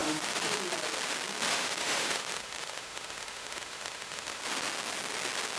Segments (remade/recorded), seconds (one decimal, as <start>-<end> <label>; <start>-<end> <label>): 0.0-0.6 remade; 0.6-1.4 recorded; 1.4-4.4 remade; 4.4-5.6 recorded